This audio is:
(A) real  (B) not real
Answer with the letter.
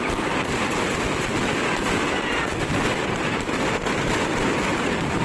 A